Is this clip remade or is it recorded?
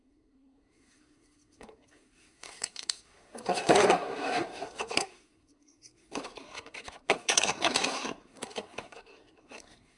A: remade